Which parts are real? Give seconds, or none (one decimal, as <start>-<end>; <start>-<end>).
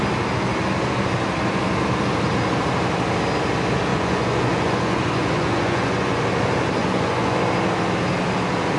0.0-3.9; 6.2-6.8; 7.4-8.8